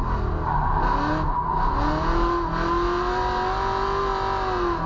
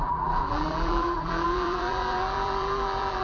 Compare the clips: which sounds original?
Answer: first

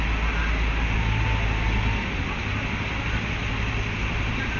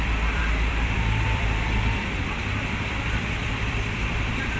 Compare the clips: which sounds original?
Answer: first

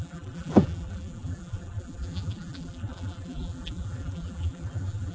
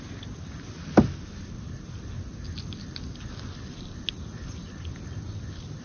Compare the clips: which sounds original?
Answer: second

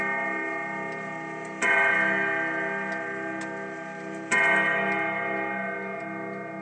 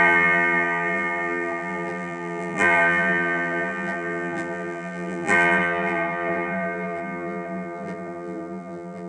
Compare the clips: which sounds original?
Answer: first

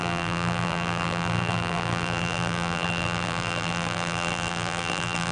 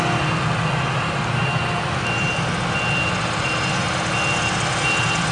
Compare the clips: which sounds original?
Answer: second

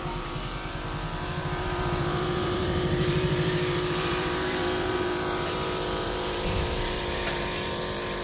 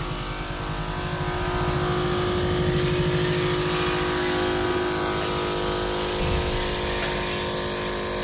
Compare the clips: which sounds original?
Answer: second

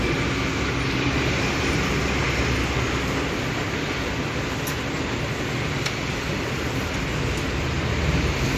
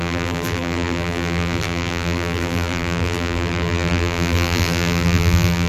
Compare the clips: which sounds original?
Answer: first